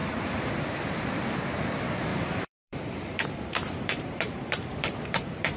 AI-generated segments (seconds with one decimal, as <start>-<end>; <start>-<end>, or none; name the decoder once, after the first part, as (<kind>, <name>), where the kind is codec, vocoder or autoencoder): 0.0-0.5 (vocoder, BigVGAN v2); 2.1-5.6

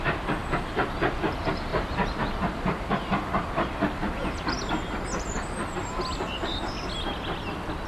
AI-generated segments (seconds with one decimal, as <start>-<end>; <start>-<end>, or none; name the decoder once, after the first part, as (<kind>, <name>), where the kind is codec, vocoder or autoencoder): 1.7-5.7 (vocoder, BigVGAN v2)

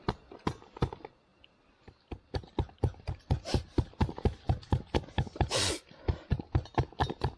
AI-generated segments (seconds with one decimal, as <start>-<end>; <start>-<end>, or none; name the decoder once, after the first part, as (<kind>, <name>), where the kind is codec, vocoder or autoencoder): 1.3-5.7 (vocoder, BigVGAN v2)

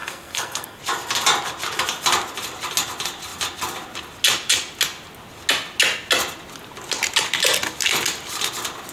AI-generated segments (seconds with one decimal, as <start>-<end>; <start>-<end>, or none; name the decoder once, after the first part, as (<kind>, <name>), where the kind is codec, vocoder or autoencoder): 0.0-0.8 (codec, SNAC)

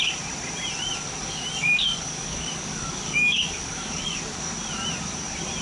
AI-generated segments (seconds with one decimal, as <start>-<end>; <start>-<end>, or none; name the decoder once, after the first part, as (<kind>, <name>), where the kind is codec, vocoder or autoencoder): 1.2-4.6 (codec, DAC)